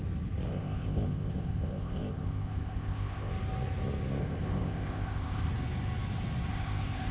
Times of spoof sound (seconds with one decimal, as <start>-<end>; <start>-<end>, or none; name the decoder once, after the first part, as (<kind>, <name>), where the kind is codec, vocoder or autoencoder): 0.5-3.3 (codec, ZipCodec); 4.2-5.5; 6.5-7.1